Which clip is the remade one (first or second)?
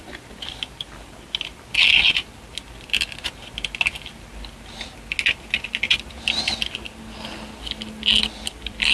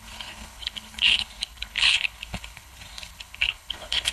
second